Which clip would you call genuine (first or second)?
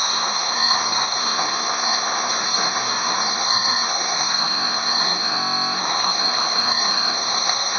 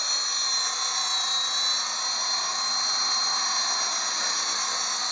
second